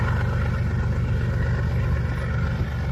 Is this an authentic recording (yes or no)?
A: yes